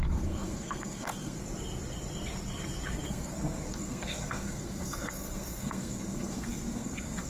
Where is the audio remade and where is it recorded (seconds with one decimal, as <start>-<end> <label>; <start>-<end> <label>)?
0.0-1.4 remade; 1.4-3.1 recorded; 3.1-7.3 remade